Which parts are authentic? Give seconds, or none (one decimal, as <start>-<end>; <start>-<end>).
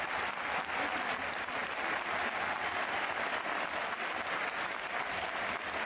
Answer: 0.0-5.9